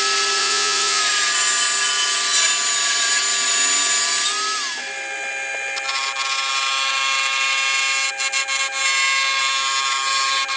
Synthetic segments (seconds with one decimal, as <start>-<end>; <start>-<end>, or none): 0.4-1.0